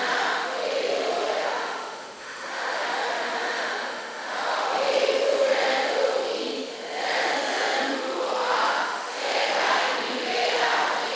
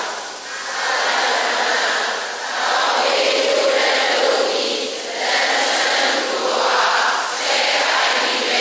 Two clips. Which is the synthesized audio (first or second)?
first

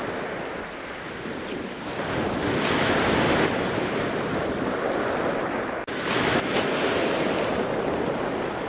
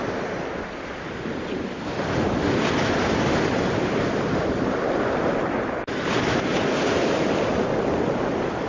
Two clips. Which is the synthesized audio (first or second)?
second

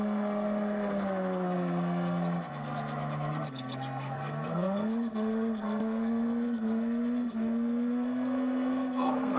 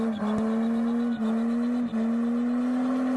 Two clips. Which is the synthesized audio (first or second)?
first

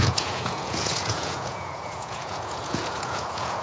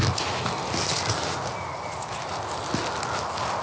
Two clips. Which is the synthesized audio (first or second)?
first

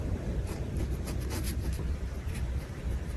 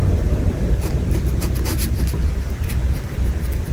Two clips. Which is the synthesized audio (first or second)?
first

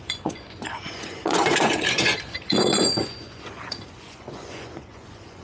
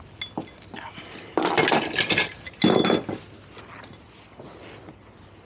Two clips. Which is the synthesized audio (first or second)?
first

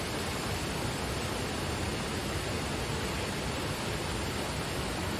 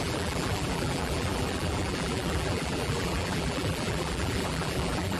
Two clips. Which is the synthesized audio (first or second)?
second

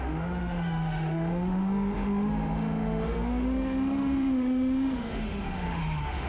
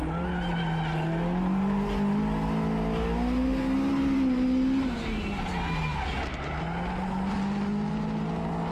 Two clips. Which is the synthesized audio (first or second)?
first